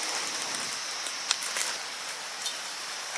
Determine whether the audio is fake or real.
real